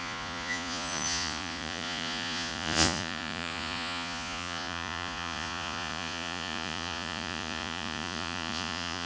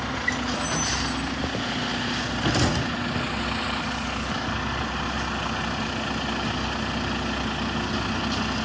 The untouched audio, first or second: second